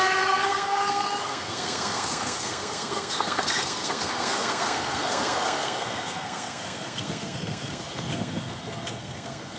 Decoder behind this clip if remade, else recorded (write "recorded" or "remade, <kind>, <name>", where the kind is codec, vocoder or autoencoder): remade, codec, SNAC